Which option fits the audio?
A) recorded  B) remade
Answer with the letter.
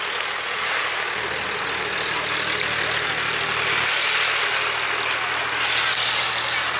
A